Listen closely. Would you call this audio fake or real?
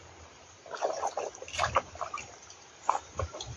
fake